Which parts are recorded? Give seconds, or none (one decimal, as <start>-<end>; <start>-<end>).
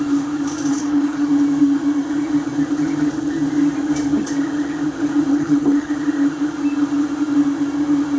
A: 0.0-0.7; 1.3-5.3; 5.9-8.2